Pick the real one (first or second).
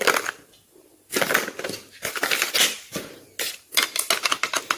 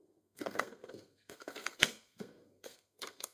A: first